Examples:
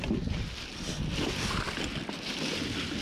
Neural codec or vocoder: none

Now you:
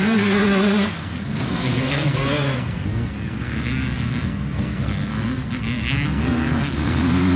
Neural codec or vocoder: codec, SNAC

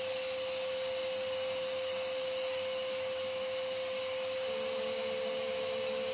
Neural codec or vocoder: none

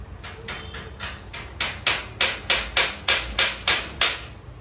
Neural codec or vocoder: none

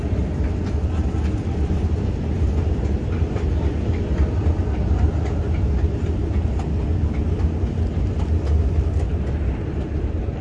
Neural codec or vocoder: none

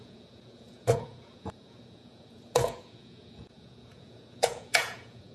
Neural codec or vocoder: vocoder, Vocos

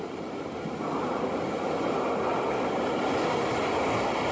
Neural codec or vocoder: none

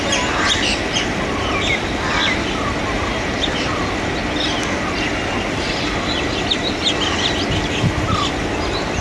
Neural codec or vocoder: none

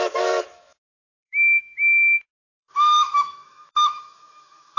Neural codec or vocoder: autoencoder, DAC-VAE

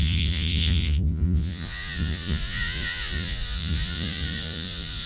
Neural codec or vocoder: vocoder, Vocos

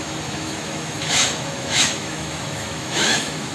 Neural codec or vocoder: autoencoder, DAC-VAE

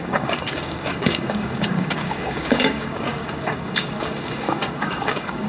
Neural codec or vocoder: codec, DAC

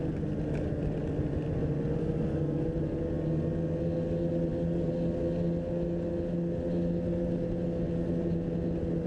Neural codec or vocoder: none